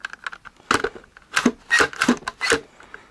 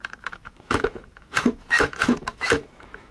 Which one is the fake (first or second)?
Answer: second